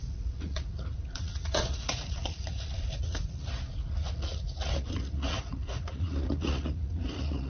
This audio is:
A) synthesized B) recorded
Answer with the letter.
A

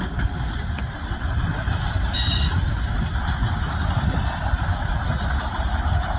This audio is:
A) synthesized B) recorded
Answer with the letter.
B